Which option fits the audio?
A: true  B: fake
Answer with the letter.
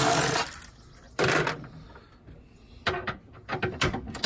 A